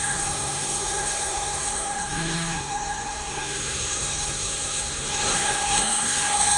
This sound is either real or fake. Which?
fake